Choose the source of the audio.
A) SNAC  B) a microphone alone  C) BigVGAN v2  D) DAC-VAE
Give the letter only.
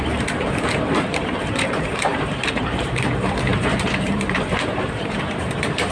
C